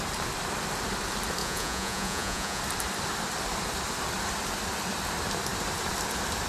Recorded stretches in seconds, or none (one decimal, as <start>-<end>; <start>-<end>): 0.0-1.4; 2.6-6.5